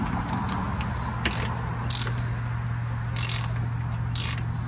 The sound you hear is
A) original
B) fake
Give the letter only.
A